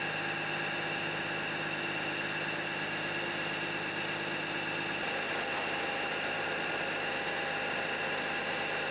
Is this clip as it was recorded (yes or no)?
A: yes